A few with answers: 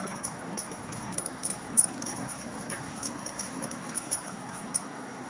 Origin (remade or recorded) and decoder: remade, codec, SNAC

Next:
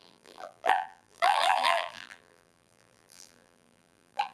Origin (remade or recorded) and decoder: remade, vocoder, BigVGAN v2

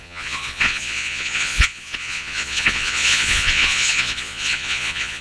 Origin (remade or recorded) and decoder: remade, vocoder, Vocos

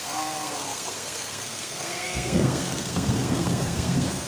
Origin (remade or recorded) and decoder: remade, codec, SNAC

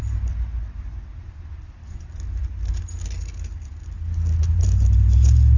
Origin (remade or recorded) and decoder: recorded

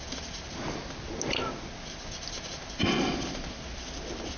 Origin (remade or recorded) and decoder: recorded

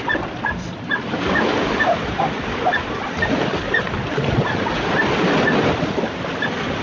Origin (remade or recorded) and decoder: remade, vocoder, BigVGAN v2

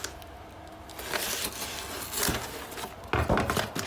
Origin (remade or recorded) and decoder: recorded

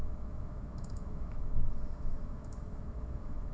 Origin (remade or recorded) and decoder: remade, autoencoder, DAC-VAE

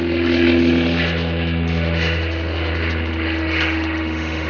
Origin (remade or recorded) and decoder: remade, autoencoder, DAC-VAE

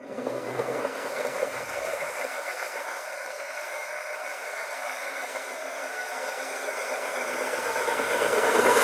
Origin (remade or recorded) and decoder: remade, codec, SNAC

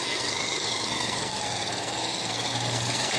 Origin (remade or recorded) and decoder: remade, codec, SNAC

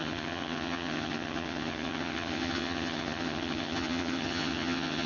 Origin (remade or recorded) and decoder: remade, vocoder, HiFi-GAN